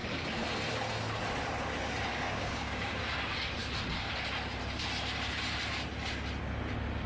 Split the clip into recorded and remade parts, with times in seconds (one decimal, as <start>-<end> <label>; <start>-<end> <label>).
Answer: 0.0-2.1 recorded; 2.1-3.0 remade; 3.0-7.1 recorded